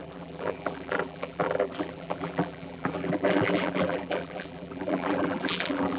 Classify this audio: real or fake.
fake